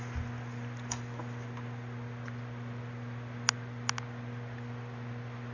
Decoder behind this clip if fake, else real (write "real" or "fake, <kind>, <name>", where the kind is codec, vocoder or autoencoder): real